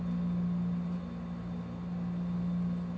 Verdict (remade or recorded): recorded